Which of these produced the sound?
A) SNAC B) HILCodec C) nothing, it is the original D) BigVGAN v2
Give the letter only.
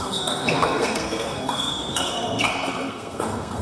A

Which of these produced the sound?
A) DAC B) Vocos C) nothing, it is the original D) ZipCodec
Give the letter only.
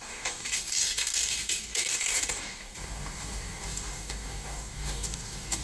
A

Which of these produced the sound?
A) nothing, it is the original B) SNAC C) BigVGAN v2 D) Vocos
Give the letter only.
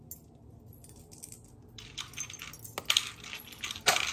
A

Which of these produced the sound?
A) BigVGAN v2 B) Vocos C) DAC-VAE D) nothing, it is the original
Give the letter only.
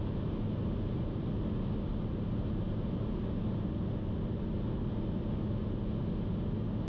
D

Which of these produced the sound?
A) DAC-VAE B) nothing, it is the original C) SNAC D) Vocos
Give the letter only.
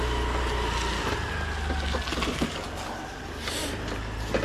B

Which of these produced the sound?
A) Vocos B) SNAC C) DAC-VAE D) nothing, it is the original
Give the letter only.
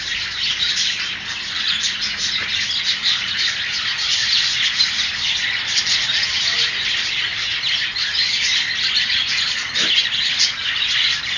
D